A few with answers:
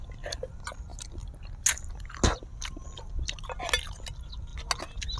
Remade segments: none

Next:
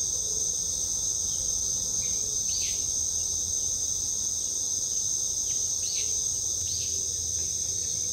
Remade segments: none

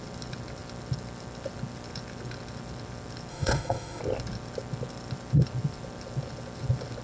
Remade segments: 3.3-4.0 (autoencoder, DAC-VAE)